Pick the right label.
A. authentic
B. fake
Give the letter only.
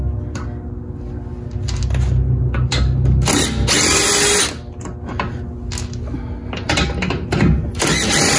A